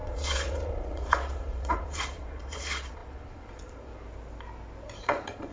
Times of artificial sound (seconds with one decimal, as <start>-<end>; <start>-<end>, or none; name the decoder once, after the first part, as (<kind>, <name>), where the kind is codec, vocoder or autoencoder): 0.0-3.9 (vocoder, Vocos); 4.9-5.5